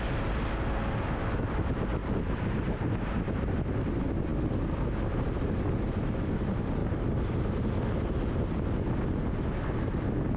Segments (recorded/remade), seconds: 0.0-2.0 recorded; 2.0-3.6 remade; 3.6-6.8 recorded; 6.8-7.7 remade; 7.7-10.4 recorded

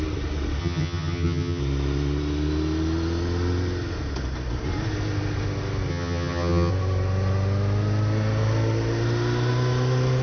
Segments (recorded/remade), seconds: 0.0-0.6 recorded; 0.6-1.6 remade; 1.6-5.9 recorded; 5.9-6.7 remade; 6.7-10.2 recorded